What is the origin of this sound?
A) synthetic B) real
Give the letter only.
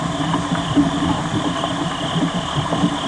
B